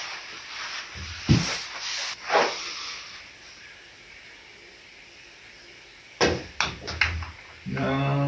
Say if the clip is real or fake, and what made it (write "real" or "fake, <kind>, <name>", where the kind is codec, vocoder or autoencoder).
real